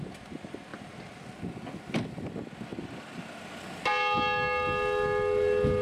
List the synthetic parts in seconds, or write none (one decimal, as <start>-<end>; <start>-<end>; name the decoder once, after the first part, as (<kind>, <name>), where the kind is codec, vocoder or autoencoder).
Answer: none